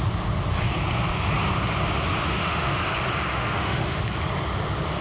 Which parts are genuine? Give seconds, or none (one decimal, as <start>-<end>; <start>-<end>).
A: 0.0-2.2; 2.8-3.3; 4.0-5.0